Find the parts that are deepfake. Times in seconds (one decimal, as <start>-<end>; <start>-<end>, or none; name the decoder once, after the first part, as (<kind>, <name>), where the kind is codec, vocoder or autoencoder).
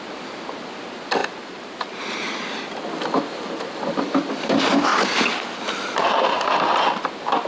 1.2-2.0 (vocoder, BigVGAN v2)